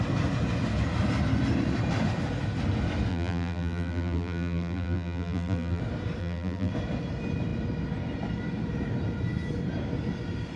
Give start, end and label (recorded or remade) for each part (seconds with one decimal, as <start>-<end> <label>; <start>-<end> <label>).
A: 0.0-3.1 recorded; 3.1-5.8 remade; 5.8-6.2 recorded; 6.2-6.7 remade; 6.7-10.6 recorded